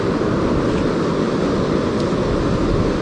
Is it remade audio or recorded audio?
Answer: recorded